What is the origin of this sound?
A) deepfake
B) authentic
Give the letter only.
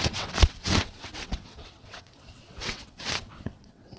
A